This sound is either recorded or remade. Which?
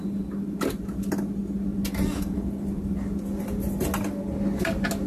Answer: recorded